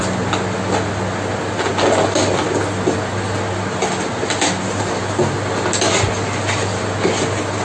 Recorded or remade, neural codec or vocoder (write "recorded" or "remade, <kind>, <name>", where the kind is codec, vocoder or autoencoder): recorded